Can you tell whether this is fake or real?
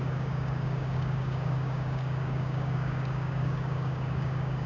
fake